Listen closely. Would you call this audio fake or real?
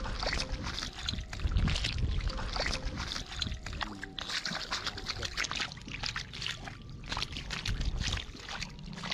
real